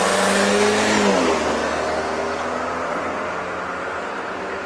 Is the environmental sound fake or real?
real